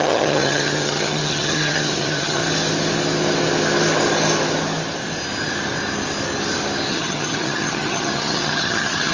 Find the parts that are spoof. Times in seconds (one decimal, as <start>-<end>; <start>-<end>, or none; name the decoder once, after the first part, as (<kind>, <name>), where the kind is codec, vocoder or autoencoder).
0.0-2.4 (vocoder, HiFi-GAN); 6.9-9.1